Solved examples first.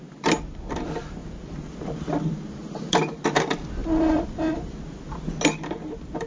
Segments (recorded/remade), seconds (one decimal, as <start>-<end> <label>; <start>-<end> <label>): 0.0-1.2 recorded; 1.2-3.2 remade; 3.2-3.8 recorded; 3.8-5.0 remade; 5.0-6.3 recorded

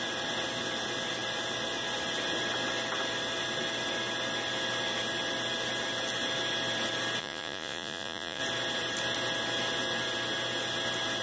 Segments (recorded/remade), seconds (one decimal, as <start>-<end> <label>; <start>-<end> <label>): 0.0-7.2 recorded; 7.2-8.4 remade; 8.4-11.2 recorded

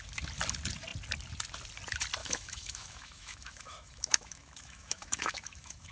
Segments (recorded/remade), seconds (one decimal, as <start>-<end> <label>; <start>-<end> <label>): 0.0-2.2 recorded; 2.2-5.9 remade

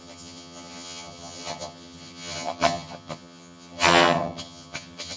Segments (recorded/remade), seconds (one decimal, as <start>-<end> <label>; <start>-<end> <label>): 0.0-5.2 remade